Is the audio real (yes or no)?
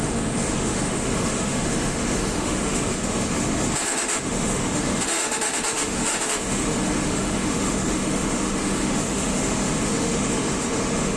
no